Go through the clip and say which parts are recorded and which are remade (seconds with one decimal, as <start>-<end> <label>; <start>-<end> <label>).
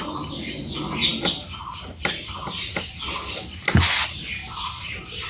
0.0-1.1 recorded; 1.1-3.0 remade; 3.0-5.3 recorded